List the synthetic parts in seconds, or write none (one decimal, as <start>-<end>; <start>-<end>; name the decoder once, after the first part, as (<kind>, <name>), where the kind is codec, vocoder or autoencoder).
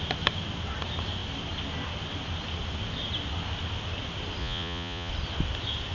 4.4-5.1 (vocoder, Vocos)